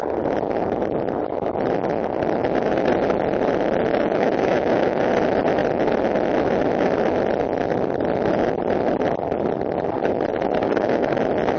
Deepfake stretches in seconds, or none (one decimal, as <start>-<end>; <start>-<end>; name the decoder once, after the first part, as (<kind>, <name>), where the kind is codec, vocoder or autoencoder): 3.9-5.1 (codec, DAC); 10.3-11.1